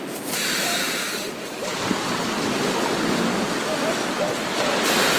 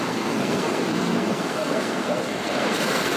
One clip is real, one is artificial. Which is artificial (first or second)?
second